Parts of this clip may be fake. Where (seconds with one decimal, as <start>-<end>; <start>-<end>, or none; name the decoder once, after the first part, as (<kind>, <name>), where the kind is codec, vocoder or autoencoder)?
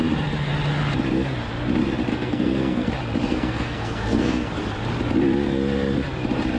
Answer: 2.1-2.9 (codec, SNAC); 3.3-4.5